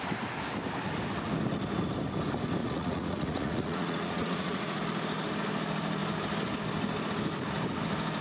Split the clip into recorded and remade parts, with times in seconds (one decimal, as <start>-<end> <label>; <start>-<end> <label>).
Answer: 0.0-2.6 recorded; 2.6-4.8 remade; 4.8-8.2 recorded